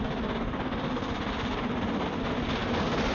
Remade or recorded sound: recorded